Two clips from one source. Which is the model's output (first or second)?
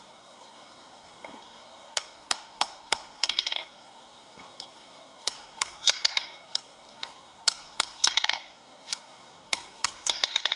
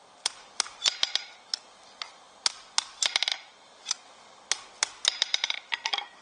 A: first